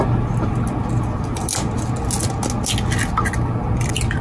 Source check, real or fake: real